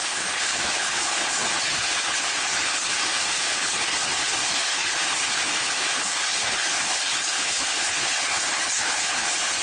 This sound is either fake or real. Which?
fake